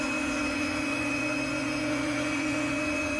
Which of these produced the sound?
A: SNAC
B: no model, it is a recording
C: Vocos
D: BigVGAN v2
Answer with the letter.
C